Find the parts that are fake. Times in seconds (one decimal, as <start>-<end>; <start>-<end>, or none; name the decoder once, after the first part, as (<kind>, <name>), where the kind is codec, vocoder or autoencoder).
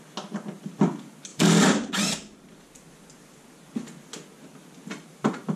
1.3-1.9 (vocoder, BigVGAN v2); 4.8-5.6